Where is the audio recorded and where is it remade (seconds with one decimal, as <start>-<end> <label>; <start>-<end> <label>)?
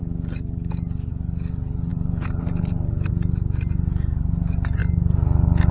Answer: 0.0-1.9 recorded; 1.9-3.1 remade; 3.1-5.7 recorded